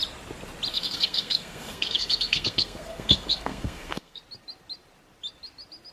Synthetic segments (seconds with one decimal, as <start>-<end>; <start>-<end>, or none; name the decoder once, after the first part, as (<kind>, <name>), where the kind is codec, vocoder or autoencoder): 0.7-4.2 (codec, SNAC)